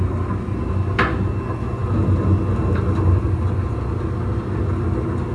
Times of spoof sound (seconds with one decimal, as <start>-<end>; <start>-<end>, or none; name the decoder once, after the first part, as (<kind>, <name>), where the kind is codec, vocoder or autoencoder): none